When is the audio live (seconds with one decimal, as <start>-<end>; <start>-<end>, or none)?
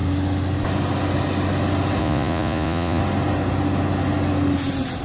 0.0-2.0; 3.0-5.0